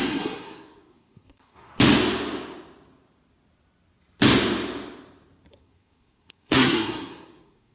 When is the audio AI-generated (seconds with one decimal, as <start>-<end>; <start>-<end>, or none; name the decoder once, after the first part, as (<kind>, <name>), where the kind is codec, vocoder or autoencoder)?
0.0-1.7 (codec, SNAC); 5.5-7.7